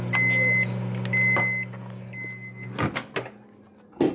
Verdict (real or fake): real